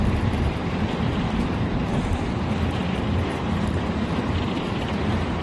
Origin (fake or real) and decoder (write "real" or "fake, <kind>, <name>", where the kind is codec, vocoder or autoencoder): fake, vocoder, BigVGAN v2